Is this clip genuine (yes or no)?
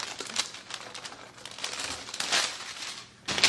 yes